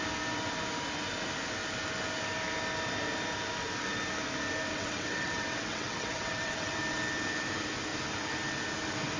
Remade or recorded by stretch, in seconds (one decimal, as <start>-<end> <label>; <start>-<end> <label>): 0.0-4.7 recorded; 4.7-6.8 remade; 6.8-9.2 recorded